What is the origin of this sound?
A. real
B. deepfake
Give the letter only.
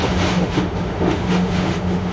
B